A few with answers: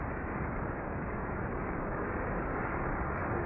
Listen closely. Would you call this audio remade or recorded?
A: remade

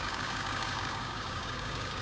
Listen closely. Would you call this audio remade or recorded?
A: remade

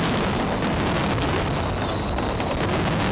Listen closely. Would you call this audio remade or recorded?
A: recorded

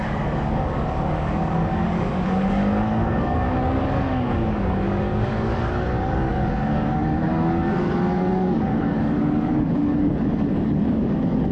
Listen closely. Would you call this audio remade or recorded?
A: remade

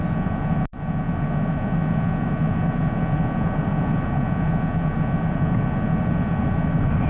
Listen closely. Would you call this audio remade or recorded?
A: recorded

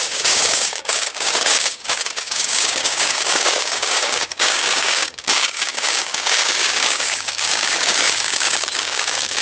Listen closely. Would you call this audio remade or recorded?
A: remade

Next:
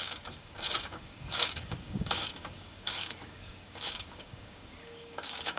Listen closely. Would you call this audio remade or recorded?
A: remade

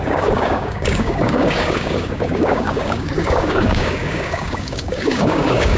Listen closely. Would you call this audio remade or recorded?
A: remade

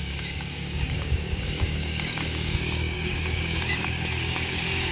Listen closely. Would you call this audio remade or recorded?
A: remade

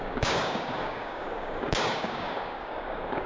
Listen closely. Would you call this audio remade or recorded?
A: remade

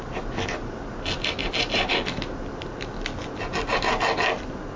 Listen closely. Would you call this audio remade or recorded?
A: recorded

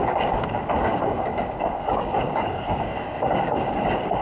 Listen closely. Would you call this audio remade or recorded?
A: remade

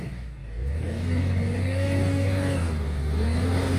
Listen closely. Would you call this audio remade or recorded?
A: remade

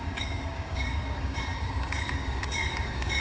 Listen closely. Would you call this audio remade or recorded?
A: remade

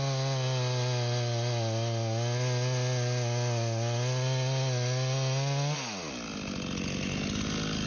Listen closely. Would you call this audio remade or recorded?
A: recorded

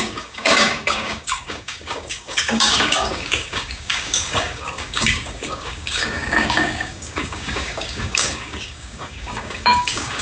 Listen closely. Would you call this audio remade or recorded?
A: remade